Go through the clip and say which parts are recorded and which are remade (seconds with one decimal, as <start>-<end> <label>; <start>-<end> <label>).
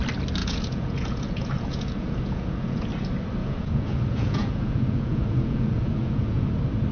0.0-0.4 recorded; 0.4-2.9 remade; 2.9-3.4 recorded; 3.4-6.5 remade; 6.5-6.9 recorded